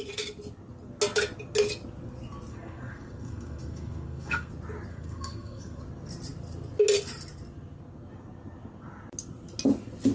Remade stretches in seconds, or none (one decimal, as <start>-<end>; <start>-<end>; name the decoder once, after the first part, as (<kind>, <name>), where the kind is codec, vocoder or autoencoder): 2.5-4.5 (codec, SNAC); 4.9-5.8